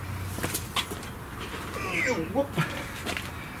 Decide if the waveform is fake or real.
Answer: real